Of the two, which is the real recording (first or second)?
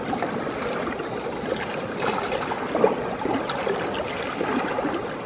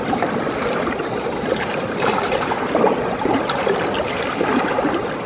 first